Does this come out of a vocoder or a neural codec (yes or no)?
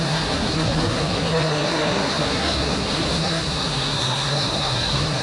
yes